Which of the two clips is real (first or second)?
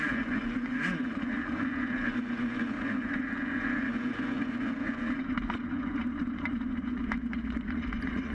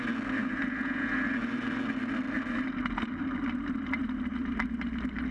second